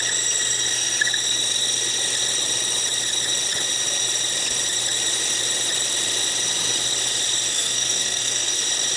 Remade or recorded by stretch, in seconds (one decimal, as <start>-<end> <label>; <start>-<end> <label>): 0.0-7.5 recorded; 7.5-8.6 remade; 8.6-9.0 recorded